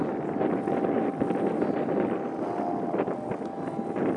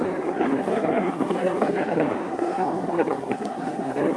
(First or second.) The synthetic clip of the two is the second